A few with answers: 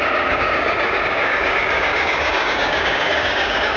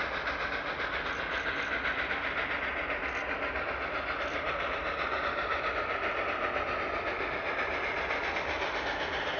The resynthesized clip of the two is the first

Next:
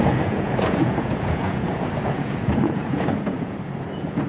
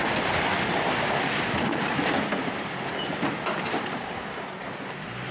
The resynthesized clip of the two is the first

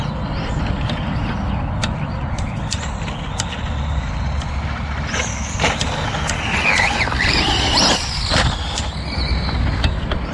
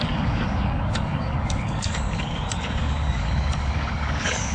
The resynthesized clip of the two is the second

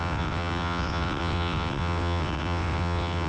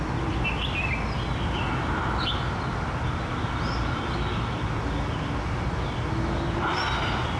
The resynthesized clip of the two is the first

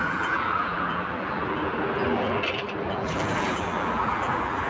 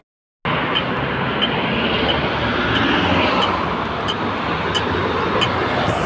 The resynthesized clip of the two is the first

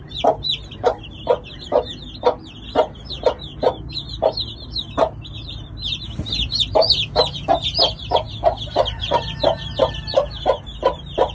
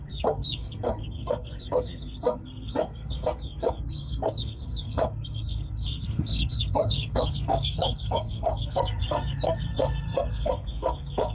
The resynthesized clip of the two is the second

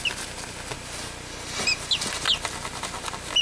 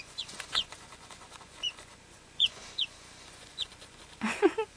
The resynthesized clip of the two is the second